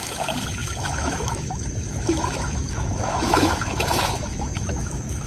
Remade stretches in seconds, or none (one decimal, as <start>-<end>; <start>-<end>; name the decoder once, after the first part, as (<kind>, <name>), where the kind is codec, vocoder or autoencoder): 0.0-5.3 (autoencoder, DAC-VAE)